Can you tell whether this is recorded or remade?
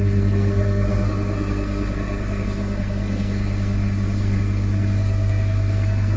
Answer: remade